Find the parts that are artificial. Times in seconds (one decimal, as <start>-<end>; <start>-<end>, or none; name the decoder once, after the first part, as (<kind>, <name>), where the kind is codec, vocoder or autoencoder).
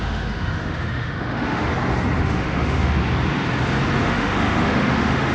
0.0-1.7 (autoencoder, DAC-VAE); 2.2-3.0; 4.0-5.3